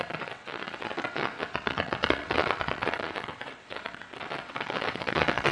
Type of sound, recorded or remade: remade